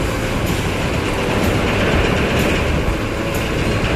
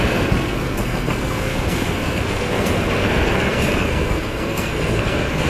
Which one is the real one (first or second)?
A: first